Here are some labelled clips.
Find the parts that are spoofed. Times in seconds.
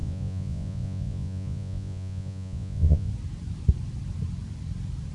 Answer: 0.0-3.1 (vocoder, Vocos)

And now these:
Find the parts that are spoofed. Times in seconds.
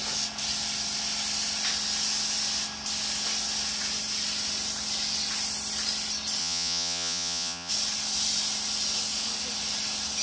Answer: 6.4-7.7 (vocoder, Vocos)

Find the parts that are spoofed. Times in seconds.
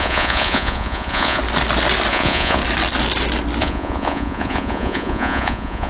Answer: 0.0-1.4 (vocoder, Vocos); 2.1-2.6; 3.6-5.9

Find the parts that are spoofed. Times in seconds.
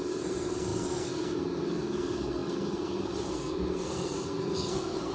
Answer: 0.0-5.1 (codec, SNAC)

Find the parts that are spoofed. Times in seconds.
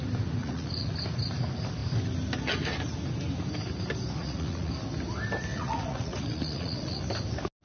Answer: 0.4-0.9 (vocoder, Vocos); 4.2-4.7; 5.5-7.0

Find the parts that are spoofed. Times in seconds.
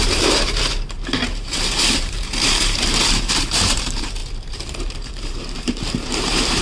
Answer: 0.0-6.6 (vocoder, BigVGAN v2)